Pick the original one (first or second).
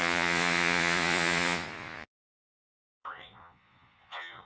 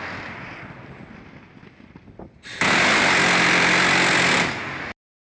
second